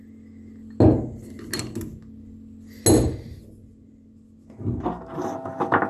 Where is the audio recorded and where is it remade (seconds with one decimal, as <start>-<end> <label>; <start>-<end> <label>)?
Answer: 0.0-5.9 recorded